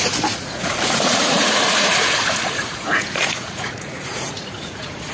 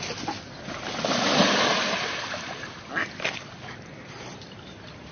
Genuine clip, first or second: second